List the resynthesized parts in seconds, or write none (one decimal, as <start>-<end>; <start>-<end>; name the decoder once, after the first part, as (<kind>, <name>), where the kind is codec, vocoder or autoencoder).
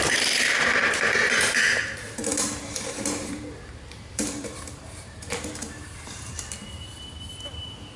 2.2-6.4 (vocoder, BigVGAN v2)